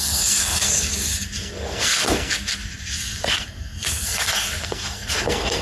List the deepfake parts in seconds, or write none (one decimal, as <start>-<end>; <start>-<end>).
0.0-5.6